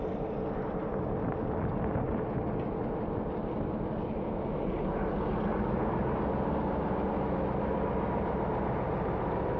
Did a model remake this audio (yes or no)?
no